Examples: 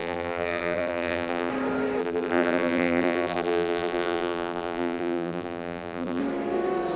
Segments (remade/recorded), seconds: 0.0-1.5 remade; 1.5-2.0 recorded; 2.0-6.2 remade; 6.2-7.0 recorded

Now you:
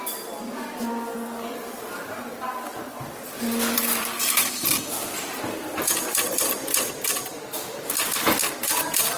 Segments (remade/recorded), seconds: 0.0-2.9 recorded; 2.9-6.9 remade; 6.9-8.4 recorded; 8.4-9.2 remade

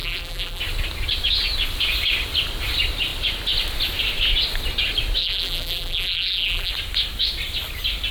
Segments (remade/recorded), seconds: 0.0-0.6 remade; 0.6-5.2 recorded; 5.2-6.7 remade; 6.7-8.1 recorded

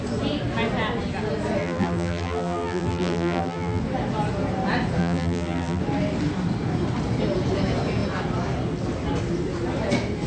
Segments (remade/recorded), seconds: 0.0-1.6 recorded; 1.6-3.8 remade; 3.8-5.0 recorded; 5.0-5.8 remade; 5.8-10.3 recorded

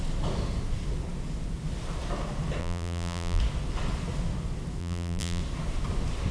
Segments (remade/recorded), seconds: 0.0-2.6 recorded; 2.6-3.4 remade; 3.4-4.8 recorded; 4.8-5.4 remade; 5.4-6.3 recorded